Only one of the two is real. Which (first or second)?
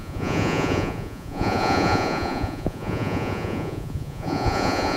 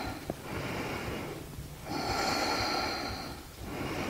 second